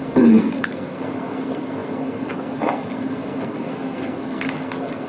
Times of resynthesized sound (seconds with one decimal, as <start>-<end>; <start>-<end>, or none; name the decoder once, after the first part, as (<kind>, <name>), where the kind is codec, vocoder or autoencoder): 0.0-5.1 (codec, SNAC)